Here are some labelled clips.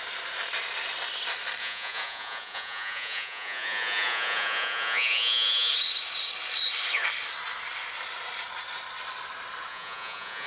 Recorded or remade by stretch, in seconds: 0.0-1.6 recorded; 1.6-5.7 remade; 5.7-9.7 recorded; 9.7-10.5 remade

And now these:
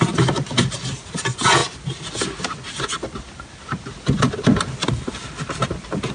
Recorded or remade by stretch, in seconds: 0.0-6.1 recorded

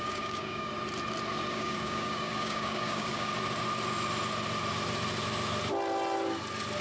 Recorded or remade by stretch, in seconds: 0.0-0.7 remade; 0.7-1.5 recorded; 1.5-3.3 remade; 3.3-6.8 recorded

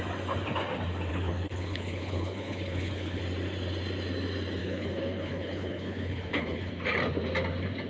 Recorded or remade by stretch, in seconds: 0.0-1.1 recorded; 1.1-3.2 remade; 3.2-4.6 recorded; 4.6-6.7 remade; 6.7-7.9 recorded

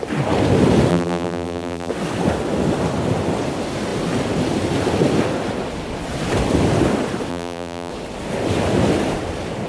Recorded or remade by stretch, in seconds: 0.0-0.9 recorded; 0.9-1.9 remade; 1.9-7.3 recorded; 7.3-7.9 remade; 7.9-9.7 recorded